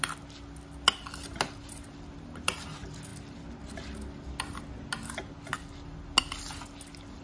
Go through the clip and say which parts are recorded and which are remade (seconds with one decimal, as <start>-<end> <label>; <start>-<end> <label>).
0.0-7.2 recorded